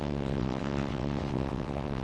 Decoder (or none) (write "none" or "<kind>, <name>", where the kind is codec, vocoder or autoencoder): vocoder, WaveNeXt